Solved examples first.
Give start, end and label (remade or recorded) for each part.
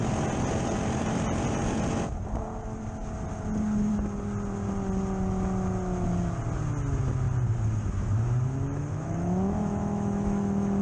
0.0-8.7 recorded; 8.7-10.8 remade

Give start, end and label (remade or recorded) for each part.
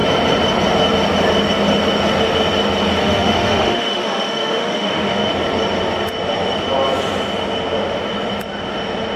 0.0-3.0 recorded; 3.0-5.3 remade; 5.3-9.2 recorded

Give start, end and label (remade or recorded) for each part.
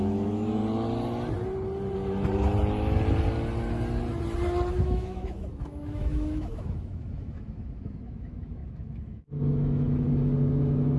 0.0-0.6 remade; 0.6-4.7 recorded; 4.7-11.0 remade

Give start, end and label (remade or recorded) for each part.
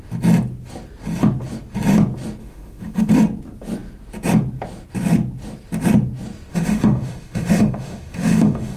0.0-2.4 recorded; 2.4-3.1 remade; 3.1-6.5 recorded; 6.5-8.8 remade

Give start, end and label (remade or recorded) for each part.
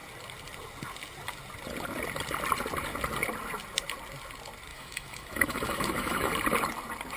0.0-4.7 recorded; 4.7-6.3 remade; 6.3-7.2 recorded